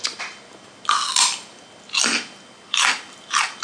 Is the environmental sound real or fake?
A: real